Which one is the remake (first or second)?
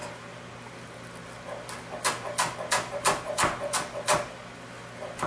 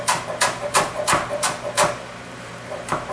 second